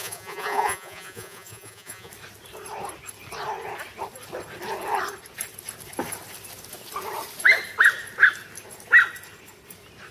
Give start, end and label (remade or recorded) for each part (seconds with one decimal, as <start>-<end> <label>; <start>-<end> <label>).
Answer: 0.0-2.1 remade; 2.1-10.1 recorded